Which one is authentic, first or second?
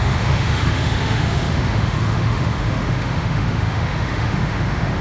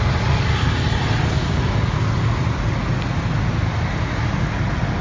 second